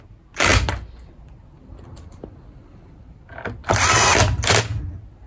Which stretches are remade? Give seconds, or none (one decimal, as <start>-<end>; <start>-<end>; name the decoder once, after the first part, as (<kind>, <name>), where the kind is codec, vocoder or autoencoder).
none

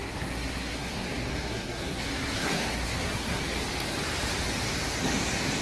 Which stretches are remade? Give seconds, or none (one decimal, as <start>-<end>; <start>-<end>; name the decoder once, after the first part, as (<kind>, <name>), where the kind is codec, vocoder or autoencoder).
0.0-3.4 (codec, SNAC)

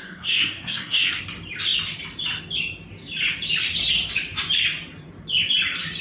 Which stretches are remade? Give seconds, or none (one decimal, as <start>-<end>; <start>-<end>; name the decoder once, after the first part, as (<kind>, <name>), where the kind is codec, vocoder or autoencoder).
0.0-1.2 (codec, SNAC)

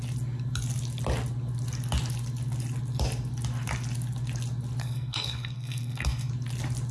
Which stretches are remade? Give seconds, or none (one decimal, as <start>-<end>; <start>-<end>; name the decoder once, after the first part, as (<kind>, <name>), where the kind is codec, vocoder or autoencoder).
4.8-6.3 (codec, SNAC)

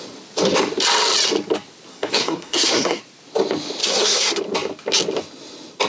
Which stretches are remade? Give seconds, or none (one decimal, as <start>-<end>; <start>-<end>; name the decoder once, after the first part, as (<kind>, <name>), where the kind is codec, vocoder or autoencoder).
1.9-3.0 (codec, SNAC); 3.8-4.4

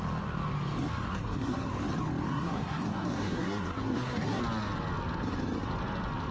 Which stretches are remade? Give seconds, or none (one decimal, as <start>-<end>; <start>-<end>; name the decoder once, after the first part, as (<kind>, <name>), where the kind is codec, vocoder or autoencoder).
1.1-1.7 (codec, SNAC); 2.3-4.4

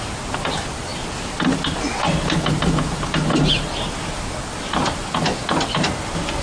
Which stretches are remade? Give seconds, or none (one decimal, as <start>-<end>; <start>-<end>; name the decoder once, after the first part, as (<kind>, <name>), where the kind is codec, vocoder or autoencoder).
none

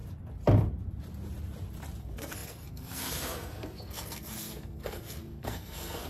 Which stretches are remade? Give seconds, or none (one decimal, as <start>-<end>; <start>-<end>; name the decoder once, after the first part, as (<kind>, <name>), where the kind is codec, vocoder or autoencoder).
2.0-6.1 (codec, SNAC)